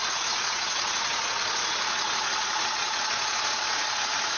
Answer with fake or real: fake